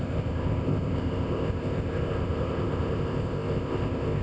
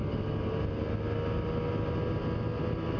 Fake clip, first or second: first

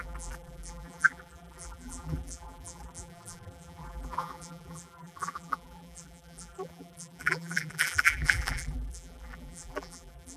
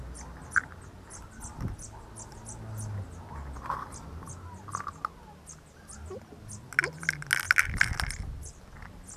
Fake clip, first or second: first